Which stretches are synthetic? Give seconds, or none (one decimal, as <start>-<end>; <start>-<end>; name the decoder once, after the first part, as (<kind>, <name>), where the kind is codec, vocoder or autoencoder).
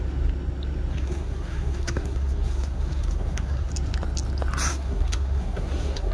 0.9-3.7 (codec, SNAC); 4.7-6.1